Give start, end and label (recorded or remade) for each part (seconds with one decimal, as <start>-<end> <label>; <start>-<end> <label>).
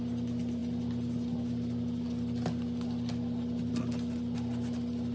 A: 0.0-5.1 recorded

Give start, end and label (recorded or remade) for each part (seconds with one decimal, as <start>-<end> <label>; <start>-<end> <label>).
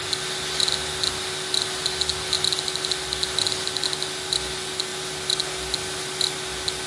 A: 0.0-6.9 recorded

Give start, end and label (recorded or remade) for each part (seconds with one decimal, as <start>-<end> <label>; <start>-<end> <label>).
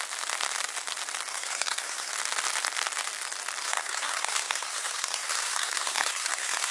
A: 0.0-1.3 recorded; 1.3-2.1 remade; 2.1-3.6 recorded; 3.6-6.7 remade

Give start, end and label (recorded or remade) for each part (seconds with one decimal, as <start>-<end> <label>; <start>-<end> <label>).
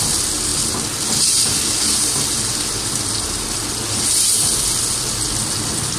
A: 0.0-6.0 recorded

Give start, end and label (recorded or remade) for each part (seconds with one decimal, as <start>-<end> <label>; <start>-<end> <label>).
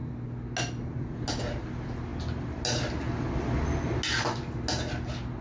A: 0.0-5.4 recorded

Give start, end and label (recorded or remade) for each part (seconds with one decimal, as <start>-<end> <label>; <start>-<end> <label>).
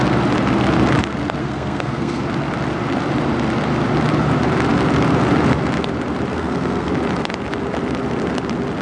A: 0.0-1.4 recorded; 1.4-2.2 remade; 2.2-6.3 recorded; 6.3-6.9 remade; 6.9-8.8 recorded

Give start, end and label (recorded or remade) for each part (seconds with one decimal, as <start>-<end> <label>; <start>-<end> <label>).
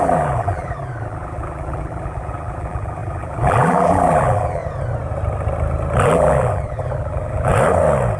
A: 0.0-4.6 remade; 4.6-6.0 recorded; 6.0-7.5 remade; 7.5-8.2 recorded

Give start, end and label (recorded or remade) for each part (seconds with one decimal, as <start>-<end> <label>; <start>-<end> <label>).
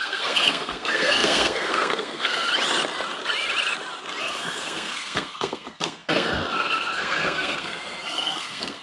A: 0.0-2.5 remade; 2.5-4.2 recorded; 4.2-8.8 remade